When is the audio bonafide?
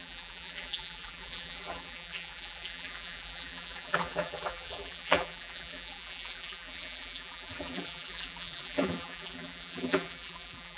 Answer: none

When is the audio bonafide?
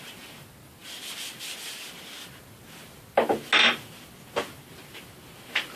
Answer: 0.0-5.8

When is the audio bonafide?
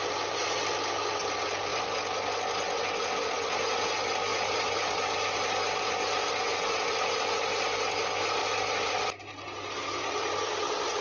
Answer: 0.0-1.7; 2.3-4.3; 6.5-8.4; 8.9-11.0